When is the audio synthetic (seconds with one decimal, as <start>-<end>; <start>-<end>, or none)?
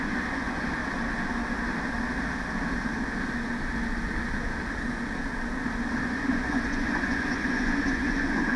0.0-0.8; 6.0-8.6